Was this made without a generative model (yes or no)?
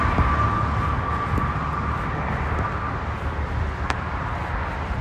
yes